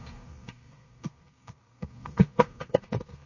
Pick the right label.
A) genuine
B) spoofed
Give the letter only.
B